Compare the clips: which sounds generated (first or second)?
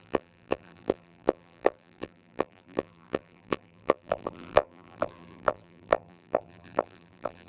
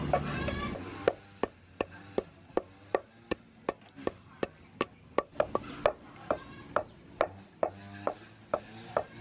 first